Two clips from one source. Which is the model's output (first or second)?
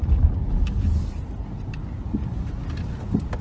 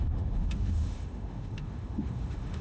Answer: second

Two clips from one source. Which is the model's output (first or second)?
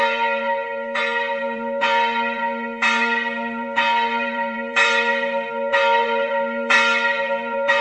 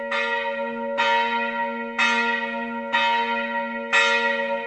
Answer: first